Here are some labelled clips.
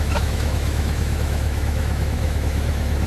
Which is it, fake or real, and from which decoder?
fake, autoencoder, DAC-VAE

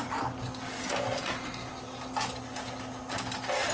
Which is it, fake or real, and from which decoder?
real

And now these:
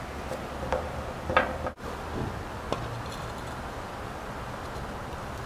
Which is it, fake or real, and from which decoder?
real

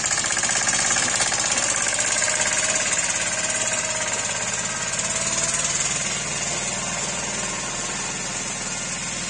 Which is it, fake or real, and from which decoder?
real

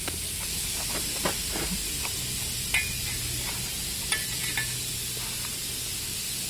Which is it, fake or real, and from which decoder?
real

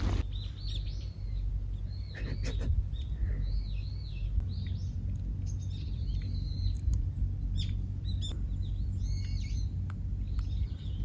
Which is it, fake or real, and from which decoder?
real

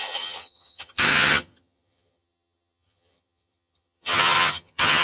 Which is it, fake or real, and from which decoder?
fake, vocoder, HiFi-GAN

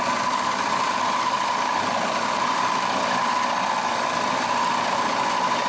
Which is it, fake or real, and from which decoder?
real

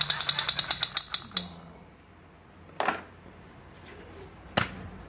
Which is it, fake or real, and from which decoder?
real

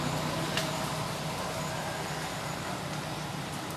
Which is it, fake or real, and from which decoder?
real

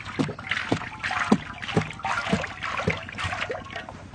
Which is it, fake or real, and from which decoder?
real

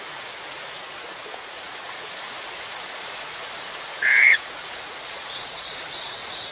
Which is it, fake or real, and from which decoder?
fake, vocoder, Vocos